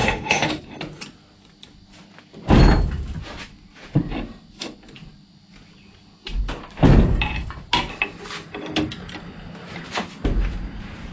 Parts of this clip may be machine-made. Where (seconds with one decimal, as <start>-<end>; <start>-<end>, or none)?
0.0-0.5